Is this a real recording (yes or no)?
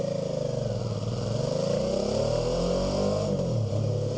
yes